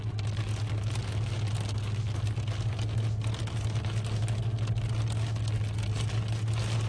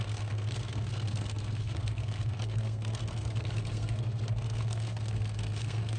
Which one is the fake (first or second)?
second